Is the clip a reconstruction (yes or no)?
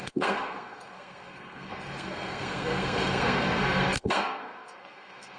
yes